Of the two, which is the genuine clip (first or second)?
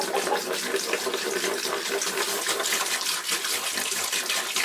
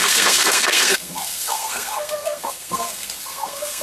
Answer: first